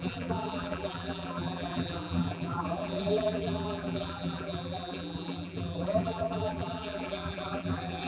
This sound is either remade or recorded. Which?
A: remade